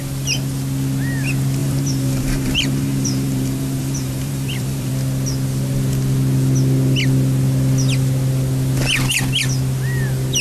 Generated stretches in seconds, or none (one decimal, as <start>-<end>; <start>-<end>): 1.6-4.9